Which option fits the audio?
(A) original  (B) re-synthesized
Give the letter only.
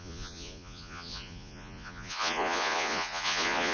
B